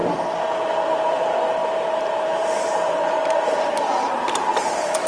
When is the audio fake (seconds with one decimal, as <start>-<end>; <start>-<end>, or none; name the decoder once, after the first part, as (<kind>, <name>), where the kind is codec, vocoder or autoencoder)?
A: 0.9-5.1 (vocoder, BigVGAN v2)

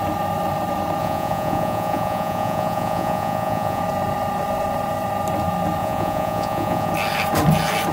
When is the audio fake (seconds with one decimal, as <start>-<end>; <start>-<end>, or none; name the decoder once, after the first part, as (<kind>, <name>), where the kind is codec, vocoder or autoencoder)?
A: 1.0-3.8 (vocoder, Vocos); 5.8-6.9

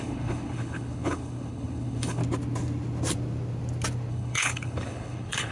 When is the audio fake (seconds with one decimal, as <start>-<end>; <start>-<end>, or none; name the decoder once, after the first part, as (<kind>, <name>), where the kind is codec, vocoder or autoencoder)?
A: 0.0-2.2 (codec, HILCodec); 4.1-5.5

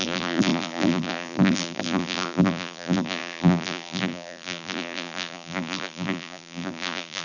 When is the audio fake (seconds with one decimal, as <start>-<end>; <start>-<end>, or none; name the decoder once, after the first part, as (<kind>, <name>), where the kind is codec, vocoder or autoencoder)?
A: 0.0-7.2 (vocoder, BigVGAN v2)